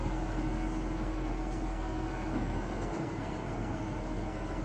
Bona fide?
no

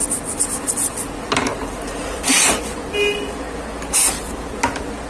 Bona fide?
yes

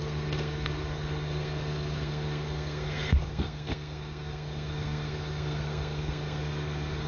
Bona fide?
no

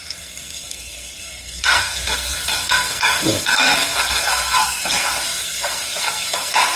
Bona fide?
no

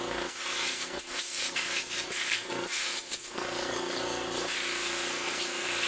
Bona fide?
no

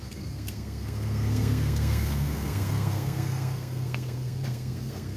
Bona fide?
no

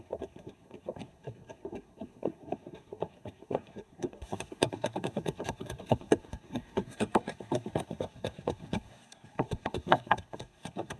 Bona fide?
no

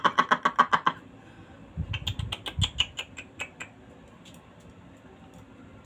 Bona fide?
yes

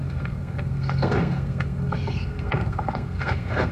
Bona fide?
no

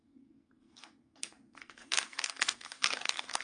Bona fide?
no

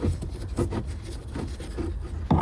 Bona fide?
yes